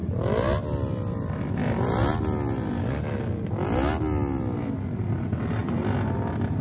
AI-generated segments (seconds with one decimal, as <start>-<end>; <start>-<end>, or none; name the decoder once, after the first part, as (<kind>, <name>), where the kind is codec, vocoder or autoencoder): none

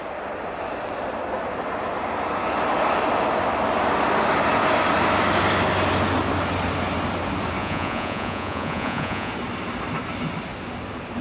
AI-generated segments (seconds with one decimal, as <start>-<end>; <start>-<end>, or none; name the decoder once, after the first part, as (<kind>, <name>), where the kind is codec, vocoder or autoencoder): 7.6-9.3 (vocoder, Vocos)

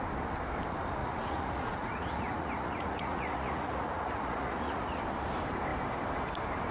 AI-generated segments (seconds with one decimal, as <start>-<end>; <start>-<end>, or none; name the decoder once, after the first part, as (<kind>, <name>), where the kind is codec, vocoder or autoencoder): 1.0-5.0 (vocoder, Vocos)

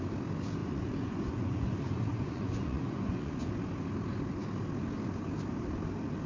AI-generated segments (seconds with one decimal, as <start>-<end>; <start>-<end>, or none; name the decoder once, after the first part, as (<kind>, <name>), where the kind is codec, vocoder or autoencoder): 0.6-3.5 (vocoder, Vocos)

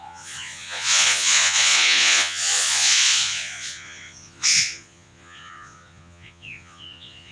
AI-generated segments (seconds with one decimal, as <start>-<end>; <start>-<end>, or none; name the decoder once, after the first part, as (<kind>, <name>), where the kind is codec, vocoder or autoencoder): 0.0-7.3 (vocoder, Vocos)

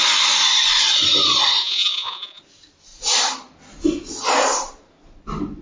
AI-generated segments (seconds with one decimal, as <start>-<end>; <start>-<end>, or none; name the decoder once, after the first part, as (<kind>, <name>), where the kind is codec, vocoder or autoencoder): 1.6-2.4 (vocoder, Vocos)